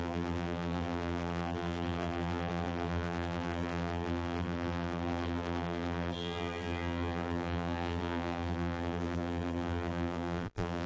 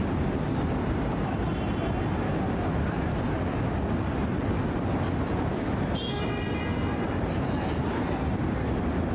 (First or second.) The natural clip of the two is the second